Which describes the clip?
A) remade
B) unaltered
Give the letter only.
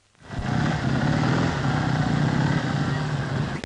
B